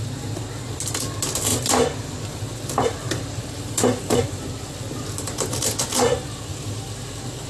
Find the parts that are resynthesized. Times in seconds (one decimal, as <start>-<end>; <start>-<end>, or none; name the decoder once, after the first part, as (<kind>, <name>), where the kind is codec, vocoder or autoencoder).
1.5-5.6 (vocoder, BigVGAN v2); 6.5-7.1